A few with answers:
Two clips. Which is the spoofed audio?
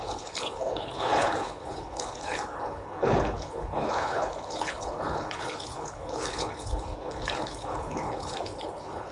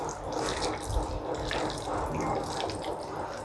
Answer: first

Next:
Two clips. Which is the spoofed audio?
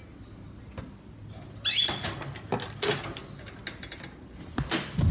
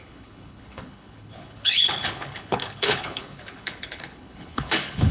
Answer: second